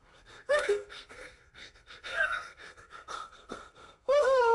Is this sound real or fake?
fake